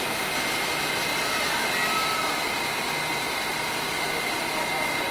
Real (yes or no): yes